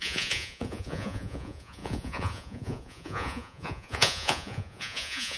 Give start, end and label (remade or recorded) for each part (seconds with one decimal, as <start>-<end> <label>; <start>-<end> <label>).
0.0-5.4 remade